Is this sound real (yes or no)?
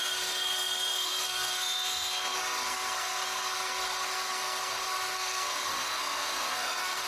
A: no